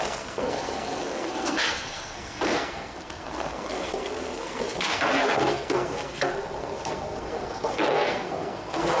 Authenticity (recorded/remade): remade